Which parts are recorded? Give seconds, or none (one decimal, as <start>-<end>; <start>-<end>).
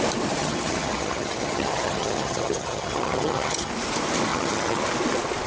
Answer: 0.0-0.4; 3.7-4.3; 4.8-5.5